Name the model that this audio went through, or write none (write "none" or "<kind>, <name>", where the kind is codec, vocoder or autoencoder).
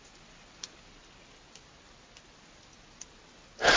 none